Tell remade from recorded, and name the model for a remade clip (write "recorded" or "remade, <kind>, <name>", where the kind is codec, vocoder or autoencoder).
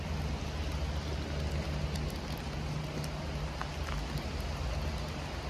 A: recorded